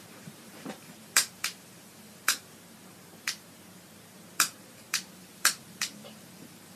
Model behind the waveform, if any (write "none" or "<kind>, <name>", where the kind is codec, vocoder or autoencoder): vocoder, BigVGAN v2